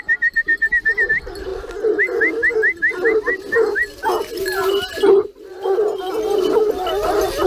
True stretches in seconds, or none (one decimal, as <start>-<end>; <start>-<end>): 0.0-7.5